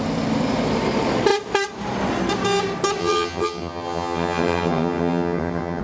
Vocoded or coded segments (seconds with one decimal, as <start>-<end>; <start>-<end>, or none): 3.0-5.8